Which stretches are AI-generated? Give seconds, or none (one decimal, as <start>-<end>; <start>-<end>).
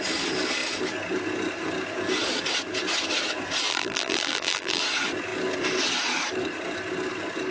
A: 3.7-4.8